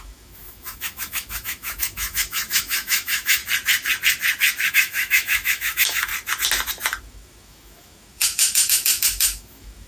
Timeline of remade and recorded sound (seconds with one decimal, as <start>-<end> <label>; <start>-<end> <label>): 0.0-3.4 remade; 3.4-4.7 recorded; 4.7-6.1 remade; 6.1-7.0 recorded; 7.0-9.9 remade